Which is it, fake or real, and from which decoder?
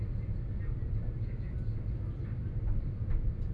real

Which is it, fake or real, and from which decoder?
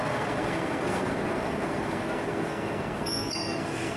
fake, codec, SNAC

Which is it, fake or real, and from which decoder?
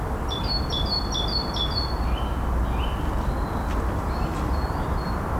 real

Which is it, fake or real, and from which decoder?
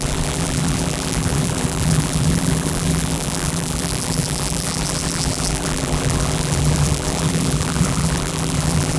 fake, vocoder, BigVGAN v2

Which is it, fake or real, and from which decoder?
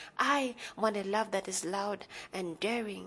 real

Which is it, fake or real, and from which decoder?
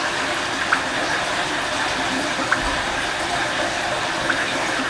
real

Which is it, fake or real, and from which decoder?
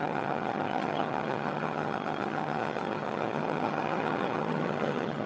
fake, vocoder, HiFi-GAN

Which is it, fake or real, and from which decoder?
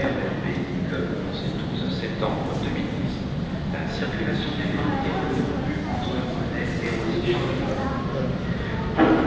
real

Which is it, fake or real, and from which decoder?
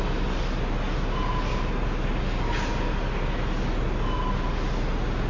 real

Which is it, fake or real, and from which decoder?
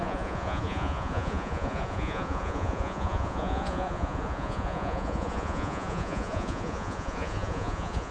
fake, vocoder, Vocos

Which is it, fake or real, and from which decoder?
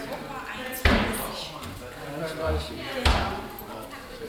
real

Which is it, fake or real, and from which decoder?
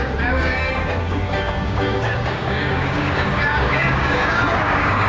fake, codec, DAC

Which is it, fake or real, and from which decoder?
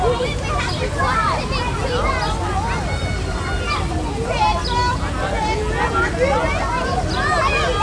real